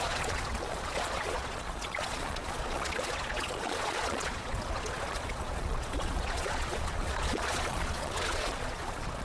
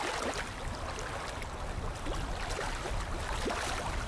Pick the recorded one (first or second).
second